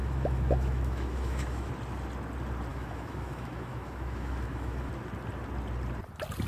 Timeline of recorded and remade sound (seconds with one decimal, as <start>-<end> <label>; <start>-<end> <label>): 0.0-1.7 remade; 1.7-2.7 recorded; 2.7-4.9 remade; 4.9-6.5 recorded